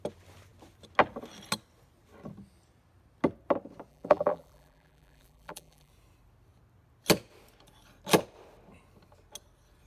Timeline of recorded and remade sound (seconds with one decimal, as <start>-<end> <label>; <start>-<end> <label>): 0.0-3.9 recorded; 3.9-5.9 remade; 5.9-9.9 recorded